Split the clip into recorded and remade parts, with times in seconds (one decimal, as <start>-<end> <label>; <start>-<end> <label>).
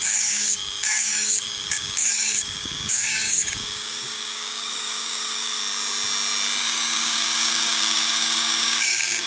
0.0-5.6 remade; 5.6-6.6 recorded; 6.6-9.3 remade